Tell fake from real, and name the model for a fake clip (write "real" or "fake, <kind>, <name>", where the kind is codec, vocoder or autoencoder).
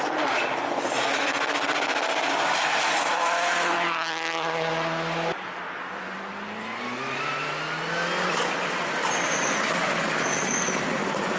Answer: real